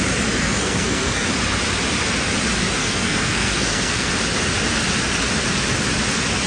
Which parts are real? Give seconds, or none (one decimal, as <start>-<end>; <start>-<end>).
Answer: 0.0-0.4; 1.3-2.8; 4.1-6.5